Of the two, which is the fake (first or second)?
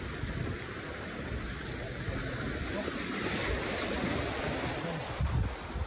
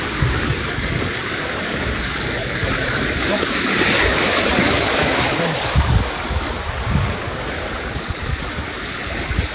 second